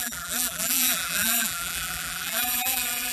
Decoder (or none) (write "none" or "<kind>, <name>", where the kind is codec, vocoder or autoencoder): vocoder, BigVGAN v2